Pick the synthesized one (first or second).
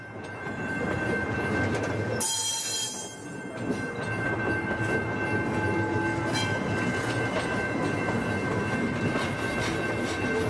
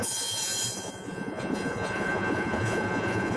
second